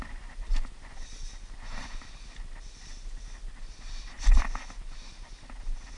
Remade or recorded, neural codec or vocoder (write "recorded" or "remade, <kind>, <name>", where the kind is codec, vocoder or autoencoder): recorded